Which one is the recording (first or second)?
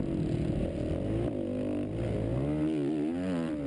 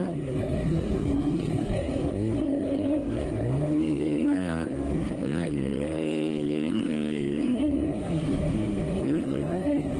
first